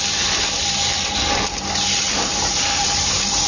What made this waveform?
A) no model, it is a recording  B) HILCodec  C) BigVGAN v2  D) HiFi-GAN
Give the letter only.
C